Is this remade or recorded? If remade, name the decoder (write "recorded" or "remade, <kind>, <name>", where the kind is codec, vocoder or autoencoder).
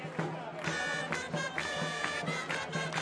recorded